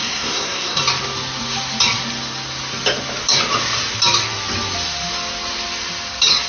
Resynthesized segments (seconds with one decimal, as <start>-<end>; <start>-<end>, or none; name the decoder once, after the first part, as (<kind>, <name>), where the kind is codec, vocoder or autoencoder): 0.0-0.8 (codec, SNAC)